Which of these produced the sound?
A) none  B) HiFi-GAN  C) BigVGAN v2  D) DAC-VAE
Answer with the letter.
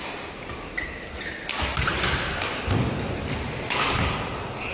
A